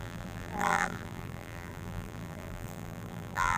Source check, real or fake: fake